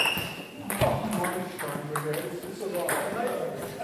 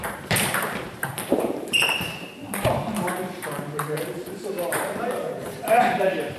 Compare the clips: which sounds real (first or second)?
first